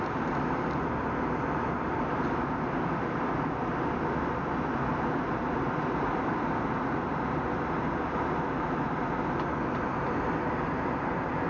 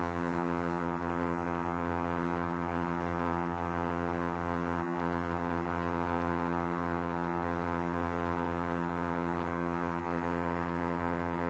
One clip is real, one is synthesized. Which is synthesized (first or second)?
second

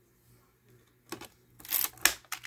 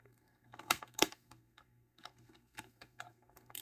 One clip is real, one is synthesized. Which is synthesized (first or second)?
second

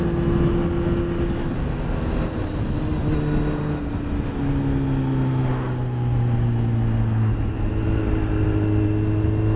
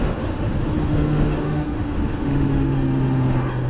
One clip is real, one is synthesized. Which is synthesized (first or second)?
second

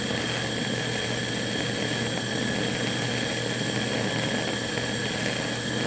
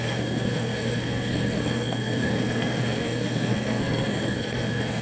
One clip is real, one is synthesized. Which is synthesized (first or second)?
second